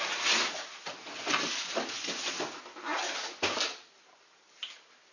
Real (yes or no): yes